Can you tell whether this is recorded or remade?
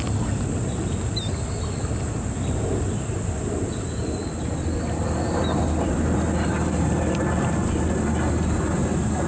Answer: recorded